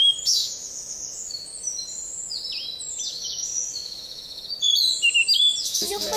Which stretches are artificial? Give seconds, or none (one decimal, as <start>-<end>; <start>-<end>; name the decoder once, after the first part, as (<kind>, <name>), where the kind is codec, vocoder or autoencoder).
0.0-1.5 (autoencoder, DAC-VAE); 3.1-4.7; 5.6-6.2